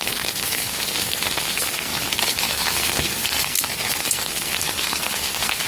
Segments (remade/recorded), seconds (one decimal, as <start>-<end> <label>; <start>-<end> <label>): 0.0-5.7 remade